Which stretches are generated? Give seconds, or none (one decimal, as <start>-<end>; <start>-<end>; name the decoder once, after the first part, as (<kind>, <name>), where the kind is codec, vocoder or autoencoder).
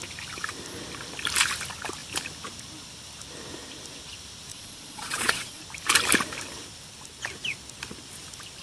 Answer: 4.5-5.6 (vocoder, Vocos)